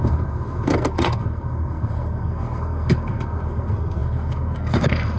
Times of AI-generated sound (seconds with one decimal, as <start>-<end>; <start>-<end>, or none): 0.0-5.2